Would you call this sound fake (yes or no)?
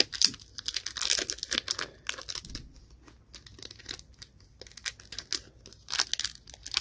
no